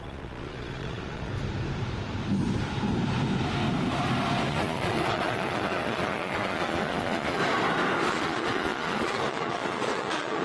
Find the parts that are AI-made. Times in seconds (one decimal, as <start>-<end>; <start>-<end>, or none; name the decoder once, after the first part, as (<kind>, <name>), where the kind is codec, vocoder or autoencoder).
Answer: 0.0-1.3 (vocoder, Vocos); 4.5-7.4; 8.1-10.4